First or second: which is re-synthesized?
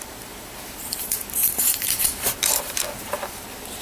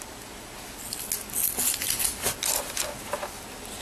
first